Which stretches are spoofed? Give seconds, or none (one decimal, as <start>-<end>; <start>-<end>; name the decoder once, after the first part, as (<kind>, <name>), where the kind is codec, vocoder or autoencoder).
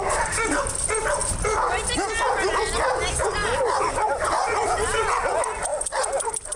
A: 3.4-4.3 (vocoder, BigVGAN v2); 5.7-6.6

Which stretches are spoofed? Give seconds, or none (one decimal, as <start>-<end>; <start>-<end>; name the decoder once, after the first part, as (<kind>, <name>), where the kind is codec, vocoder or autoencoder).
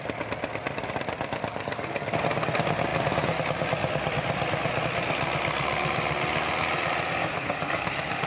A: 1.5-2.1 (codec, DAC); 7.3-8.3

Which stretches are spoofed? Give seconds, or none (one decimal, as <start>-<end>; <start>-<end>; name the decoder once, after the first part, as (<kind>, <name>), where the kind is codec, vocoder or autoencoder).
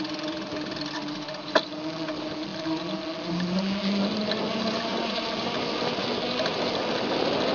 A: none